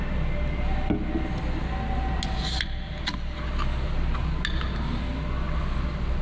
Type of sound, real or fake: real